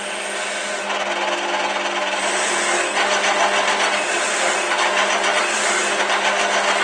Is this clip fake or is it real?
real